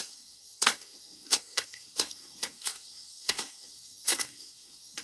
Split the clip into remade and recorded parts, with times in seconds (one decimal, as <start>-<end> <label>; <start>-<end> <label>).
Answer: 0.0-5.0 remade